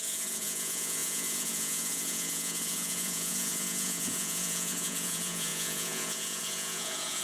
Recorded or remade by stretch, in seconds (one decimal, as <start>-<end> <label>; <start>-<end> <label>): 0.0-7.2 remade